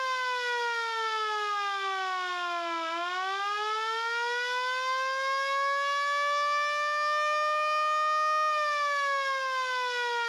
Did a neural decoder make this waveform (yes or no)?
no